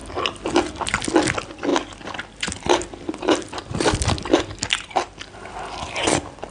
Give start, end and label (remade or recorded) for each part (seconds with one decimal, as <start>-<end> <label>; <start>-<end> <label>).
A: 0.0-6.5 recorded